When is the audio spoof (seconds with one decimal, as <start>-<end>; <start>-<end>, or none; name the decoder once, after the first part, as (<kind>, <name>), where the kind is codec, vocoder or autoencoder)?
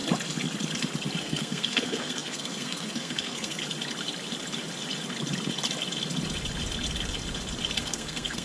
1.2-3.6 (codec, SNAC); 7.8-8.4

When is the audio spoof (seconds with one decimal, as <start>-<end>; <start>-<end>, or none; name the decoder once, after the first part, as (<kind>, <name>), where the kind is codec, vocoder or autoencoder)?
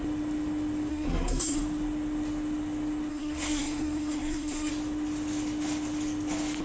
0.9-1.6 (codec, SNAC); 3.1-4.7